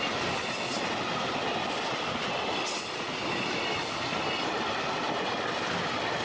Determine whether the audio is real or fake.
real